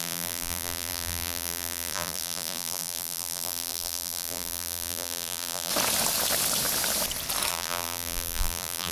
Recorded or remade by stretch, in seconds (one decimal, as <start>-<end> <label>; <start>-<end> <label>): 0.0-5.7 remade; 5.7-7.5 recorded; 7.5-8.9 remade